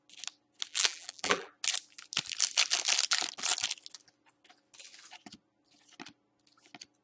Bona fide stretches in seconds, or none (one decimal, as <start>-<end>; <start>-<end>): 0.0-0.7; 1.5-7.0